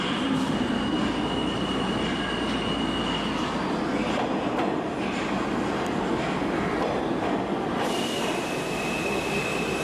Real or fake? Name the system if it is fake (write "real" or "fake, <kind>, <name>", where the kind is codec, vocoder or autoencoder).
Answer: real